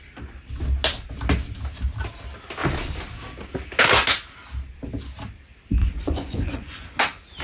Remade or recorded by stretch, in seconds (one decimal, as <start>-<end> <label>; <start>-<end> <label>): 0.0-5.8 recorded; 5.8-7.0 remade; 7.0-7.4 recorded